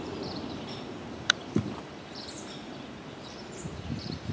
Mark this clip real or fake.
fake